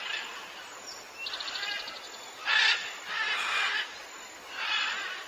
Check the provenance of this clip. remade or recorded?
recorded